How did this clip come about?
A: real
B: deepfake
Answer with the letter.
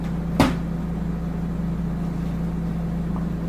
A